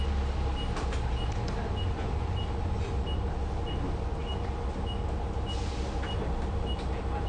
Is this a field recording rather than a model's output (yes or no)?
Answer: yes